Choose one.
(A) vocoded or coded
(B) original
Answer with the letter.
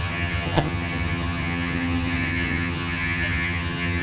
A